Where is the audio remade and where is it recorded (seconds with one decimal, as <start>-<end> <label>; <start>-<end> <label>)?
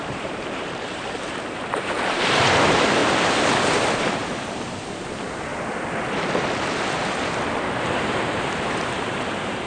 0.0-3.0 remade; 3.0-3.7 recorded; 3.7-4.2 remade; 4.2-4.7 recorded; 4.7-5.5 remade; 5.5-7.8 recorded; 7.8-9.7 remade